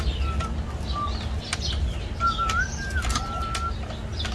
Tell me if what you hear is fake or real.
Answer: real